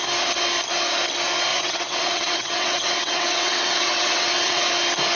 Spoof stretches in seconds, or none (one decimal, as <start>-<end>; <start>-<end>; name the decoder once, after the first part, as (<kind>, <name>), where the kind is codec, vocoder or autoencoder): 1.5-4.6 (vocoder, WaveNeXt)